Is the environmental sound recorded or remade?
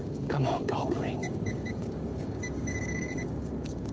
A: remade